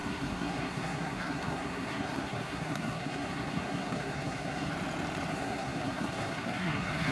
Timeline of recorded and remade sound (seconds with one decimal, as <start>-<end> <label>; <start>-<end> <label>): 0.0-4.7 remade; 4.7-5.3 recorded; 5.3-7.1 remade